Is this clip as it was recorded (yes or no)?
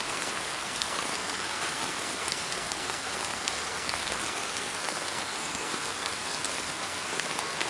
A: no